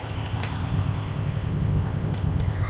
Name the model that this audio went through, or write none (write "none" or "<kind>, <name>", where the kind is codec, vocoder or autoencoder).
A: codec, ZipCodec